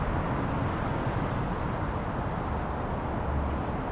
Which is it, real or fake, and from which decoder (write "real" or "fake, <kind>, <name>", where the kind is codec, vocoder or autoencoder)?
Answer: real